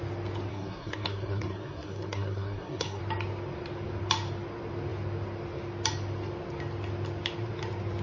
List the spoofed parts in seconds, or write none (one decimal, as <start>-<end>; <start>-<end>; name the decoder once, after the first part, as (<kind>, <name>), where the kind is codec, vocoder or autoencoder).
0.5-3.0 (codec, SNAC)